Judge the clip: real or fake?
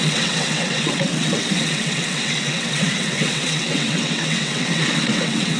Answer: fake